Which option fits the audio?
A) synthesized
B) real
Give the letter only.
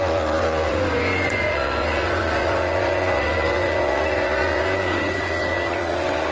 A